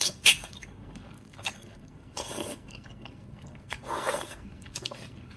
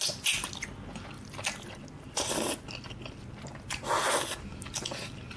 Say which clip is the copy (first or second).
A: first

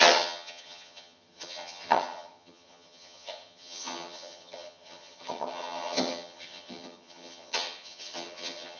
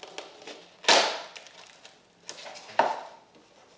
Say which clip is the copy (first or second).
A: first